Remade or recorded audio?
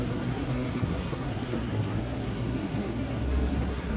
remade